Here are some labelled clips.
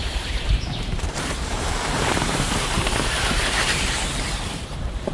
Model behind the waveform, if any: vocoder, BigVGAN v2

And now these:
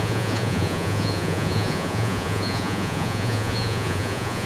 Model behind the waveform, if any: vocoder, Vocos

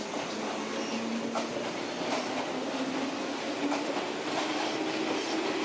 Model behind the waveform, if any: none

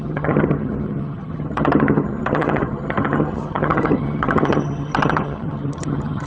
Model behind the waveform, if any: vocoder, HiFi-GAN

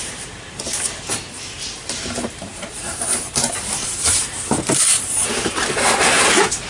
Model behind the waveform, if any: vocoder, BigVGAN v2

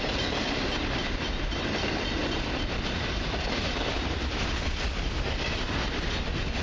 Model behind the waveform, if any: vocoder, BigVGAN v2